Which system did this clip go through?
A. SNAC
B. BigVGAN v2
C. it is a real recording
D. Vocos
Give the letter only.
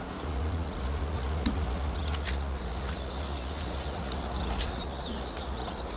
D